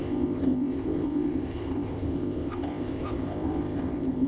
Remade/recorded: remade